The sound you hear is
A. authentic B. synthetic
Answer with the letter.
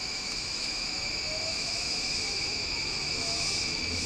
B